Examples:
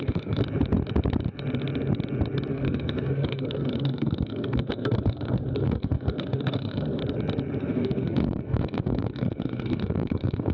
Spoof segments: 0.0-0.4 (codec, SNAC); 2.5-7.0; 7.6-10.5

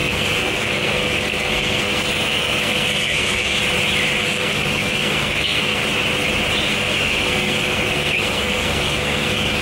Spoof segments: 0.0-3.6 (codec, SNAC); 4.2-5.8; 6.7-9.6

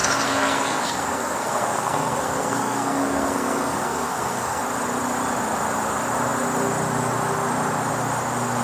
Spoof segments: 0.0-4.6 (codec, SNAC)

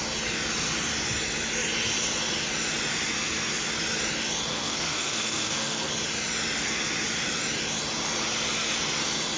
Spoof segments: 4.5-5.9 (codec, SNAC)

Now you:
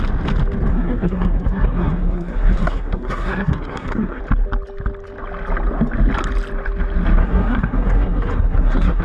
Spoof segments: 0.7-4.2 (codec, SNAC); 7.2-9.0